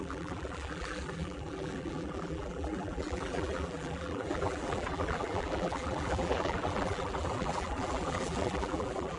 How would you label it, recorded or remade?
remade